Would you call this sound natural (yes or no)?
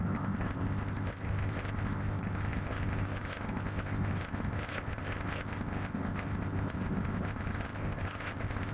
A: no